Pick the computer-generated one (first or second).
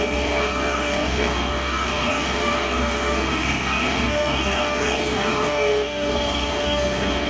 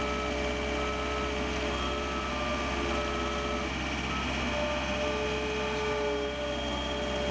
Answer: first